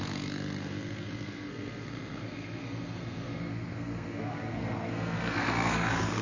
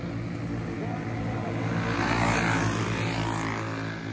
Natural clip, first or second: second